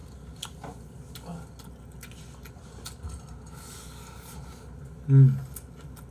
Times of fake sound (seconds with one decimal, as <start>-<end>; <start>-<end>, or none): none